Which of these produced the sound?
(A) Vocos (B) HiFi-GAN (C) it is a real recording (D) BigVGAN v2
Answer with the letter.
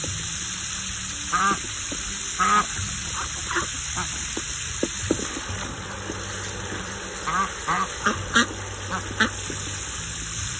C